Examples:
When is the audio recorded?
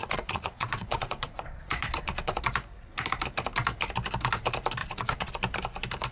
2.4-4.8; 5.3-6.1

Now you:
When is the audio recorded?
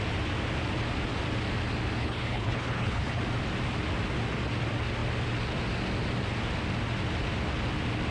0.0-2.0; 3.2-8.1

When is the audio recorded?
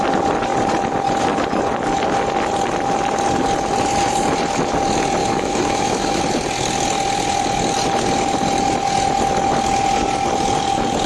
0.0-5.2; 6.2-11.1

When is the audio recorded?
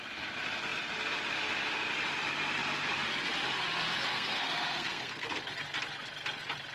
0.0-4.1; 5.4-6.7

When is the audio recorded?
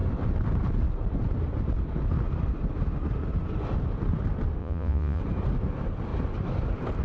0.0-4.6; 5.2-7.0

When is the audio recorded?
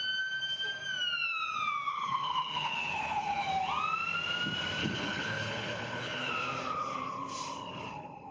0.0-1.9; 3.5-4.8; 6.3-8.3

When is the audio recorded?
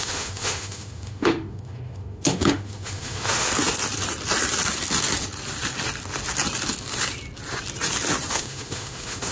3.5-8.3